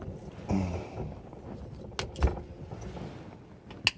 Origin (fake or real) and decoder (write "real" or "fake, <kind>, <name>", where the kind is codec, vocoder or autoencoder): real